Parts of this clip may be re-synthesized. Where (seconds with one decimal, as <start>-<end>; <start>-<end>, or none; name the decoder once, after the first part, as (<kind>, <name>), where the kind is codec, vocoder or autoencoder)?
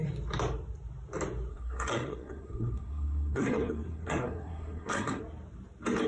1.5-5.2 (codec, SNAC)